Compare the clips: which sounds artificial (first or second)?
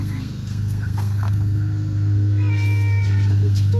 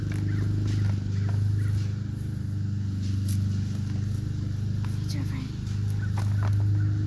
first